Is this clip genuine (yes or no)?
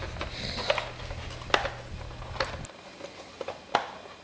yes